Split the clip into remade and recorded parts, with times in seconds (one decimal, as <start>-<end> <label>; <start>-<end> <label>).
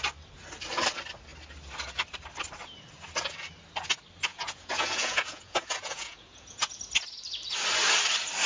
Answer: 0.0-4.3 recorded; 4.3-6.8 remade; 6.8-8.5 recorded